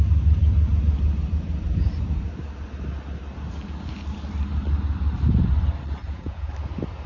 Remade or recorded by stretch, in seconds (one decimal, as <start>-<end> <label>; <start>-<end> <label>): 0.0-6.0 recorded; 6.0-6.5 remade; 6.5-7.1 recorded